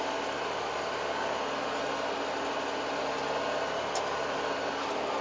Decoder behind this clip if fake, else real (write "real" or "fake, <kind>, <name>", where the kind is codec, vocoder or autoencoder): real